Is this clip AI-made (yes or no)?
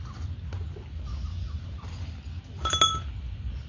no